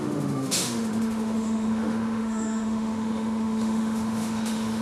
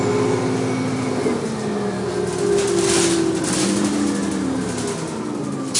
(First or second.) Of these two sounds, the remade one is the first